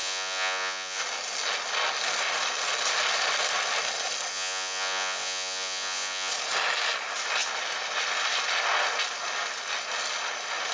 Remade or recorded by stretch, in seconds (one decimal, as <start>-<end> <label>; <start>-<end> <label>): 0.0-1.0 remade; 1.0-4.3 recorded; 4.3-6.3 remade; 6.3-10.7 recorded